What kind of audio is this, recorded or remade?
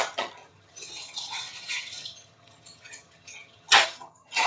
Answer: remade